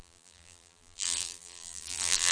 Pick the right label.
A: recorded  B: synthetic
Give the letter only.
B